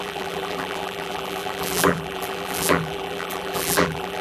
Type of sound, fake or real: fake